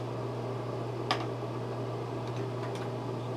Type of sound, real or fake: real